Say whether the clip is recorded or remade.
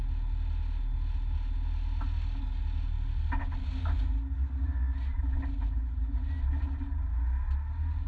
recorded